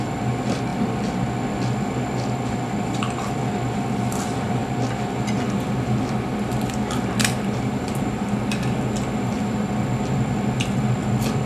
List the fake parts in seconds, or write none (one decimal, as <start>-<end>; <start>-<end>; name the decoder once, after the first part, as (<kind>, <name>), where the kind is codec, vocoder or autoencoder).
0.0-0.7 (vocoder, BigVGAN v2); 3.8-4.6; 5.4-11.5